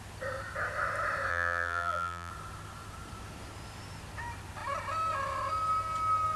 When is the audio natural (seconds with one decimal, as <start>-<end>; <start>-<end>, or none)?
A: 0.0-1.3; 2.3-6.4